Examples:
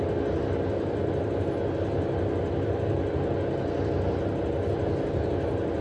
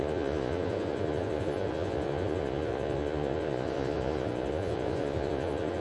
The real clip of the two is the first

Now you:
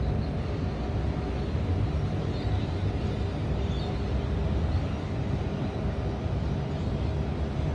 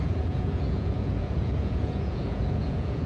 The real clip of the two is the first